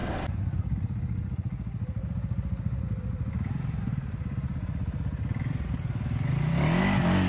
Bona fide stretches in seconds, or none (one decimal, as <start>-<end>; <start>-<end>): 0.0-2.8